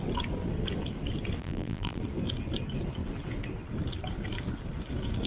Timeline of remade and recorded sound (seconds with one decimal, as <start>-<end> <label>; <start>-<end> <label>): 0.0-1.4 recorded; 1.4-2.0 remade; 2.0-5.3 recorded